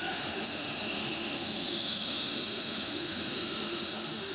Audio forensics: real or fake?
fake